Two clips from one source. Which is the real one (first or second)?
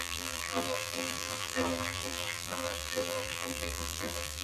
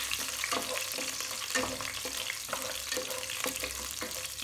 second